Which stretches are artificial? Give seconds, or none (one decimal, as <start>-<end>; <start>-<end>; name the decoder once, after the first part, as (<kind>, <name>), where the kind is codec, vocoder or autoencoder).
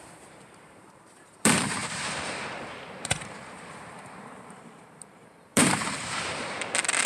0.0-7.1 (vocoder, BigVGAN v2)